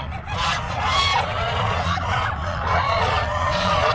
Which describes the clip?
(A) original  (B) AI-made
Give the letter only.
B